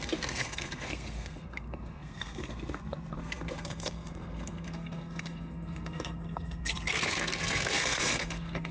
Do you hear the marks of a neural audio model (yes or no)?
yes